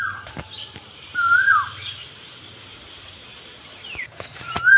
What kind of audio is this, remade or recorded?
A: remade